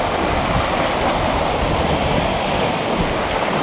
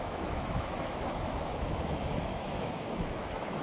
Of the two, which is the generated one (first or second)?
second